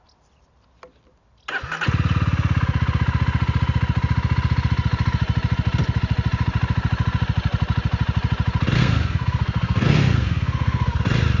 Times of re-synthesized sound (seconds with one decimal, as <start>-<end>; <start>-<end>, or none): 8.8-11.0